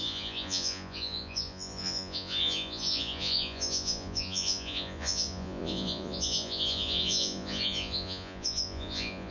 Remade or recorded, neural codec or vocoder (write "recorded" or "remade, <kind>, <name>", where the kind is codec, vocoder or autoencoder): remade, vocoder, Vocos